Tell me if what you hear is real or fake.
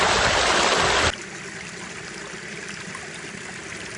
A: real